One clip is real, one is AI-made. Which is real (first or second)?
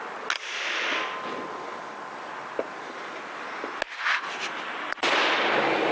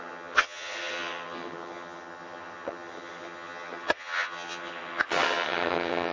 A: first